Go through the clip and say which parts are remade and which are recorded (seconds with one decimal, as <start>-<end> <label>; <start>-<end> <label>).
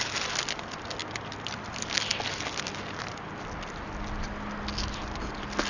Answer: 0.0-5.7 recorded